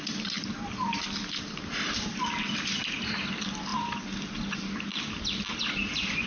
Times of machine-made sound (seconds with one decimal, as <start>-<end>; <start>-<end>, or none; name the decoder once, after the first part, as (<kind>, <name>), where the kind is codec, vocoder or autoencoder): none